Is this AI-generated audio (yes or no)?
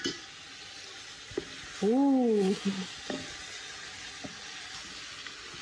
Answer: no